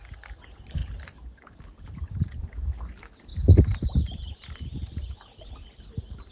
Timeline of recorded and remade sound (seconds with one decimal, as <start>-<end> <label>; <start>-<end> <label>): 0.0-0.8 recorded; 0.8-2.4 remade; 2.4-3.3 recorded; 3.3-5.5 remade; 5.5-6.3 recorded